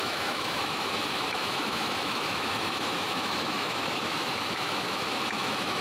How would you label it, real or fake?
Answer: fake